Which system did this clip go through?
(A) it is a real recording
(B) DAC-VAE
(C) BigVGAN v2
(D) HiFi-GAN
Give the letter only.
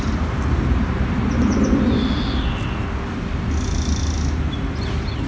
A